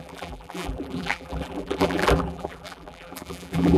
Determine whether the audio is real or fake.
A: fake